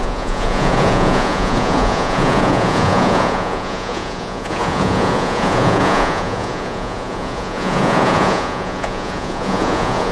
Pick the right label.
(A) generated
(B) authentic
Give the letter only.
A